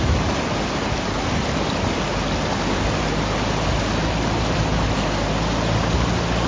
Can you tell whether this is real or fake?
real